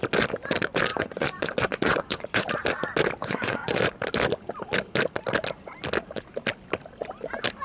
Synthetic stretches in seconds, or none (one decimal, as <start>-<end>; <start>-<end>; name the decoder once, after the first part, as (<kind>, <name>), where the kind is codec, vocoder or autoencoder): 0.9-2.5 (vocoder, Vocos); 3.2-3.8